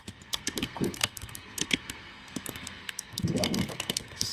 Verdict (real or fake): fake